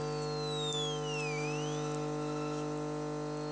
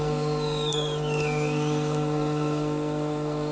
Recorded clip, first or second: first